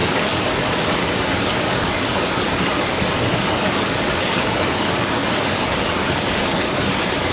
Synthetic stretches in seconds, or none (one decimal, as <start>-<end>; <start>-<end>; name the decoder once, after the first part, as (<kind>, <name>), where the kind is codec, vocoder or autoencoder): 0.0-7.3 (codec, DAC)